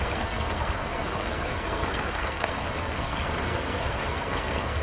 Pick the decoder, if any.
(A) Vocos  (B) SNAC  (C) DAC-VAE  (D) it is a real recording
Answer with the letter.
B